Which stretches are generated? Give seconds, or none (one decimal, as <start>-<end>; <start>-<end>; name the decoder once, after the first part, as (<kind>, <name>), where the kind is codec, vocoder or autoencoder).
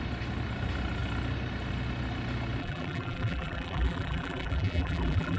2.6-5.4 (vocoder, BigVGAN v2)